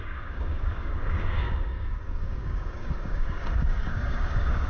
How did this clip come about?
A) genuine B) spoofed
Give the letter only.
B